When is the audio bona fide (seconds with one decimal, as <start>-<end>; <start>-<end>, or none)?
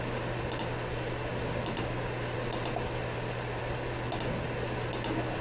0.0-5.4